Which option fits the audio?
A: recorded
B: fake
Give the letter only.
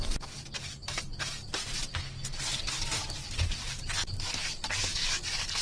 A